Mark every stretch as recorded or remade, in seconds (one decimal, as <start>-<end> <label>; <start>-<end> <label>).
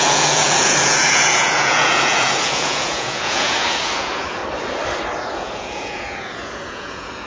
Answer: 0.0-4.4 remade; 4.4-5.3 recorded; 5.3-7.3 remade